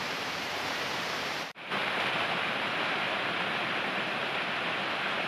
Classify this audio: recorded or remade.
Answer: remade